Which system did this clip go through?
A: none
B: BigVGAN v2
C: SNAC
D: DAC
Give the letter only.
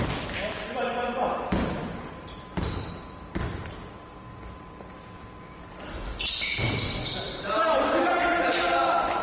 B